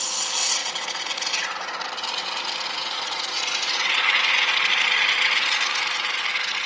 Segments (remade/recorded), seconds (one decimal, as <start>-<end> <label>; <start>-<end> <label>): 0.0-0.6 recorded; 0.6-1.8 remade; 1.8-2.8 recorded; 2.8-4.0 remade; 4.0-6.7 recorded